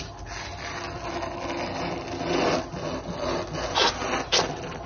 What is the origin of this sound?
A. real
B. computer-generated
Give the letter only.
A